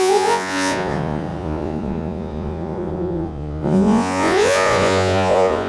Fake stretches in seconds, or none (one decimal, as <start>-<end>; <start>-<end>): 0.0-5.7